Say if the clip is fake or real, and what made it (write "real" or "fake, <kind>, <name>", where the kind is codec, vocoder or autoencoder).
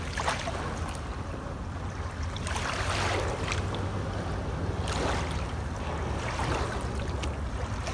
real